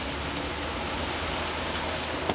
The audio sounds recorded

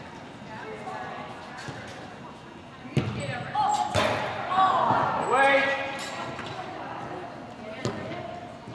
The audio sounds recorded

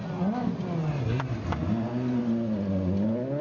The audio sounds recorded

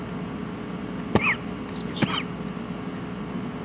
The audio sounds recorded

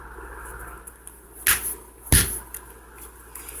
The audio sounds recorded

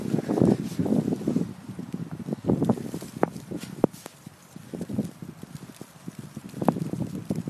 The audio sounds remade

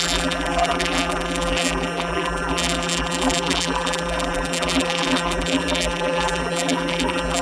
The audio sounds remade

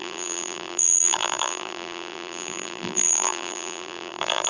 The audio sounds remade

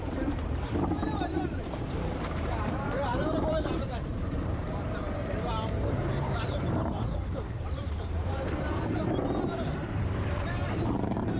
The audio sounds remade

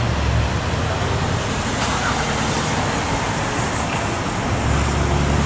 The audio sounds recorded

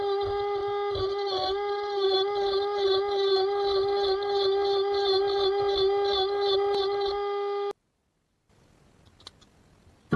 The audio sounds recorded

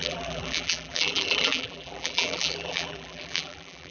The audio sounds remade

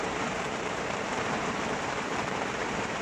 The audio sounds remade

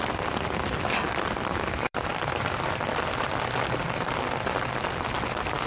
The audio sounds remade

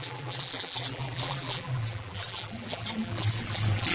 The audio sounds remade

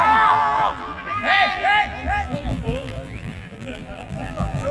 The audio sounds remade